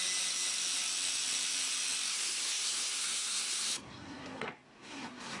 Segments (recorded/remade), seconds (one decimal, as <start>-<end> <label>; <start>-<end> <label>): 0.0-2.1 recorded; 2.1-5.4 remade